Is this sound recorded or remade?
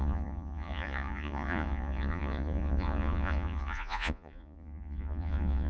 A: remade